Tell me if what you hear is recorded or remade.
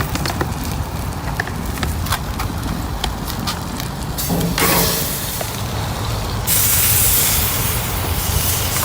remade